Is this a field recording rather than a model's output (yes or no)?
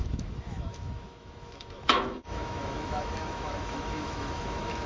no